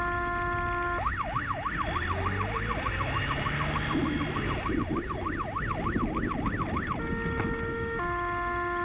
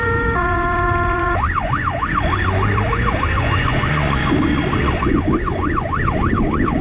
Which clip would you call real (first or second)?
first